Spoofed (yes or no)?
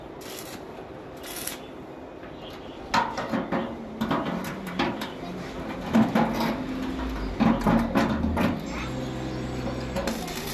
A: no